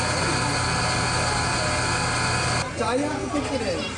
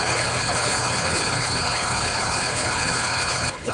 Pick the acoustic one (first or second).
first